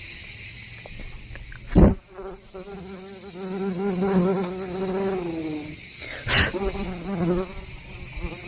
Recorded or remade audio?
recorded